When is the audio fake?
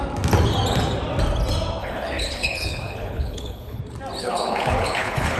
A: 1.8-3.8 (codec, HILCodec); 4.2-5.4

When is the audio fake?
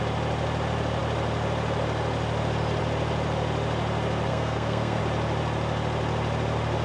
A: 4.3-5.0 (codec, SNAC)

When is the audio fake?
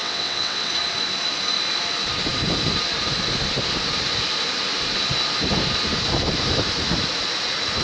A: 0.0-0.7 (vocoder, WaveNeXt)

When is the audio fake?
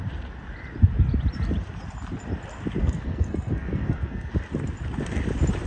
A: 2.8-4.3 (codec, SNAC)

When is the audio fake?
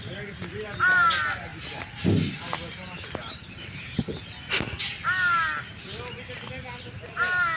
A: none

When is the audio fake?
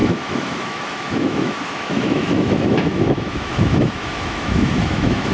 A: 0.0-5.3 (autoencoder, DAC-VAE)